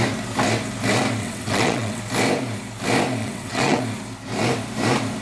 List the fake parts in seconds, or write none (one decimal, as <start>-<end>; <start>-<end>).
1.2-2.0; 3.2-3.8